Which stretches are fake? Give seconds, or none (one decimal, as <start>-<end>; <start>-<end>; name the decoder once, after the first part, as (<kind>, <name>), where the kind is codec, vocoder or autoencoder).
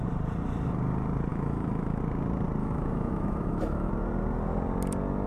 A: 1.3-2.0 (autoencoder, DAC-VAE); 2.6-3.9